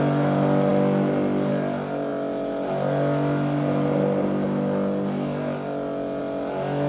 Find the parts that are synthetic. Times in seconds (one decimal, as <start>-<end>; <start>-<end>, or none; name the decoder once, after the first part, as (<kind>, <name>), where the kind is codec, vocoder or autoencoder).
none